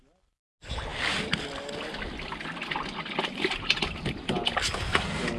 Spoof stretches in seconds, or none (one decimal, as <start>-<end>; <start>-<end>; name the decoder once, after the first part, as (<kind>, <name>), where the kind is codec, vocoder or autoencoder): none